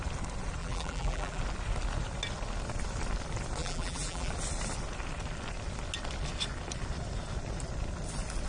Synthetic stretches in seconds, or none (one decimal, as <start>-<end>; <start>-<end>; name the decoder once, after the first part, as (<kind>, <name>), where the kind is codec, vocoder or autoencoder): 0.6-1.4 (vocoder, BigVGAN v2); 3.6-4.3